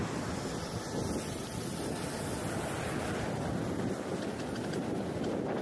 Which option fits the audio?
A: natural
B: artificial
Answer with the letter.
A